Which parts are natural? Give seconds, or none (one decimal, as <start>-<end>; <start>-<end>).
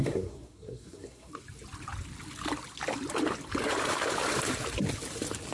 1.3-5.5